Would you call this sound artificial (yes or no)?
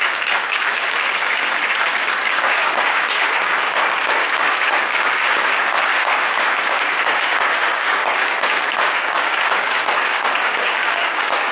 yes